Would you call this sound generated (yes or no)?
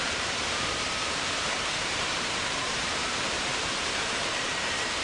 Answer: yes